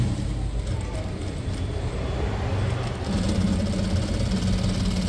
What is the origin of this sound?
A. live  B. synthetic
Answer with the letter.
A